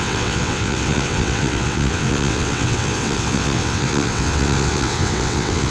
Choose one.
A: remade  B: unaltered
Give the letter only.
A